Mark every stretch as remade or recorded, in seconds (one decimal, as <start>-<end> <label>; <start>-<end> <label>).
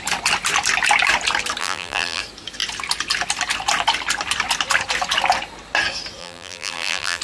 0.0-1.6 recorded; 1.6-2.2 remade; 2.2-6.2 recorded; 6.2-7.2 remade